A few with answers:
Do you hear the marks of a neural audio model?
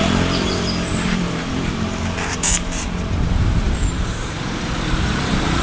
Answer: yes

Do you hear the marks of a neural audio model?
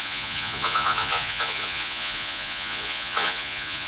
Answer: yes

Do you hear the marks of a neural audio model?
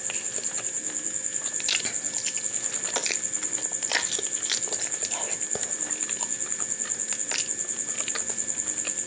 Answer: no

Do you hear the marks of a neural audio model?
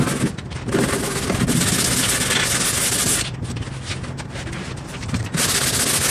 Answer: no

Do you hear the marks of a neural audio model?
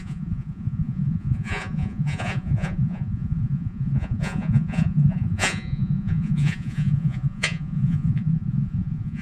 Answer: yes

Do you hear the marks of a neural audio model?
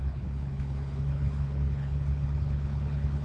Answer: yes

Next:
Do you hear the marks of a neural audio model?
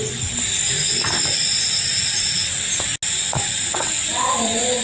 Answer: no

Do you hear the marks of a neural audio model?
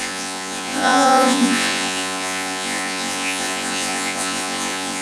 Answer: yes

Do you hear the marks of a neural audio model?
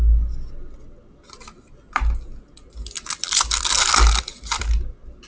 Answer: no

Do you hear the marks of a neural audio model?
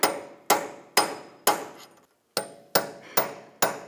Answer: no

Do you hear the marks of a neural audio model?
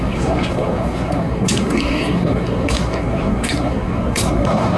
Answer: yes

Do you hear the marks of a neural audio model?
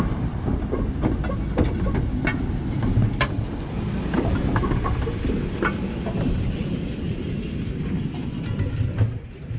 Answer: no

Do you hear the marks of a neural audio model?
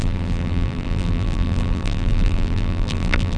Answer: yes